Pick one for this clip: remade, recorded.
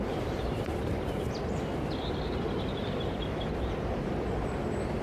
remade